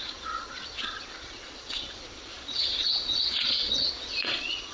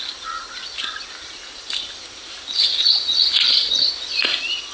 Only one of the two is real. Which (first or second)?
second